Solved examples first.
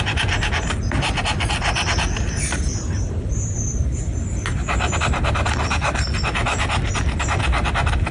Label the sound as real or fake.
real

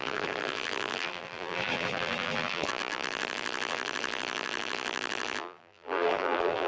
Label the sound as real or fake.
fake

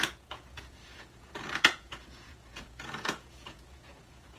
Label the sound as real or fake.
fake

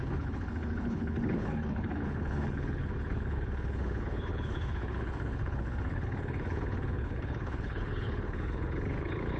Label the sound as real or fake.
fake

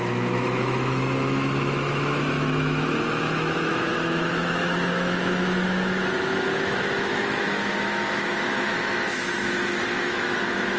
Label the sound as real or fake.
fake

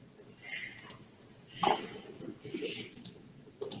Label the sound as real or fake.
real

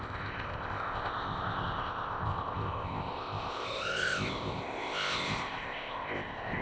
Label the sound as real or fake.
fake